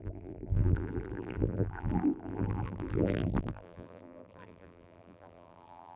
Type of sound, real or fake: fake